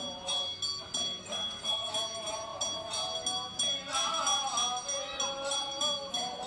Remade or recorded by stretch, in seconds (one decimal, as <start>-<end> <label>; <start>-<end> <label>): 0.0-1.2 recorded; 1.2-1.9 remade; 1.9-6.5 recorded